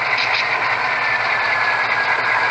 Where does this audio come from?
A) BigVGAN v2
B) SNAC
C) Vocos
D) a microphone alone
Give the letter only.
D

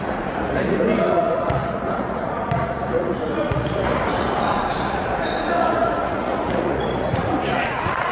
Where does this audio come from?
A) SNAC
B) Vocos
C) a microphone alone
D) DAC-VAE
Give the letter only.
B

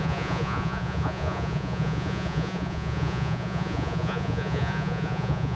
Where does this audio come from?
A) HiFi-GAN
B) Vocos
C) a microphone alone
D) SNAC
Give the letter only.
B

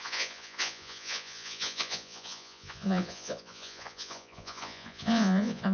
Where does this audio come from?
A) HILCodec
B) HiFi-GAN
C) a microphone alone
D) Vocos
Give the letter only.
D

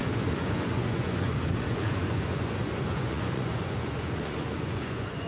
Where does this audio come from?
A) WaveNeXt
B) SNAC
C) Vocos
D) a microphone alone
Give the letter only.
C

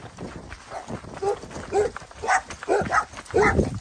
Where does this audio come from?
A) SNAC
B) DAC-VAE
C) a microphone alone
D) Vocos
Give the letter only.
C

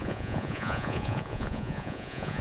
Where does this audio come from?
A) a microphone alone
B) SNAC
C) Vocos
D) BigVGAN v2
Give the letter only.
C